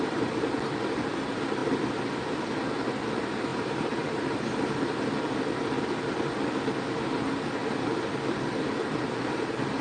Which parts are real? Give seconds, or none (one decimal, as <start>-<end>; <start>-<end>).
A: 0.0-3.5; 4.8-9.8